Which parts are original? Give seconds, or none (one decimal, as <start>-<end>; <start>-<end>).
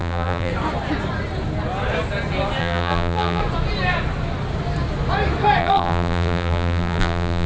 0.5-2.6; 3.4-5.6